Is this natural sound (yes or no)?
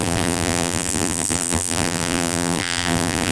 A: no